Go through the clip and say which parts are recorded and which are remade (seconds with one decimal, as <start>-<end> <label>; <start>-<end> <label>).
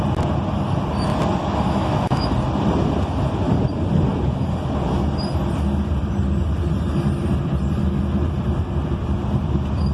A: 0.0-1.4 recorded; 1.4-2.3 remade; 2.3-9.9 recorded